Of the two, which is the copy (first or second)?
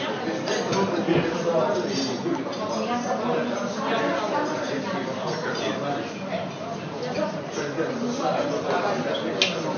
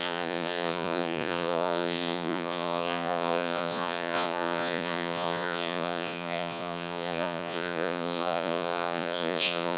second